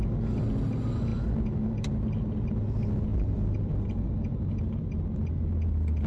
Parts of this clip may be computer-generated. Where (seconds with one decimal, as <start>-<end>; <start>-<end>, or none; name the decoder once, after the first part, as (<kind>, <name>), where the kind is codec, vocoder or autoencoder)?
none